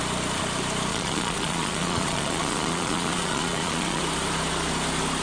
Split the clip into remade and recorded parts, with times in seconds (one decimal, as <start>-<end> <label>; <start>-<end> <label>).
0.0-0.9 recorded; 0.9-4.0 remade; 4.0-5.2 recorded